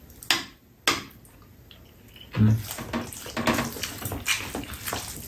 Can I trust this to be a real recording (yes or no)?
yes